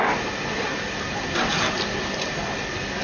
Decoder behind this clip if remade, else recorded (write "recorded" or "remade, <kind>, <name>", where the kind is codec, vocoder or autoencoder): recorded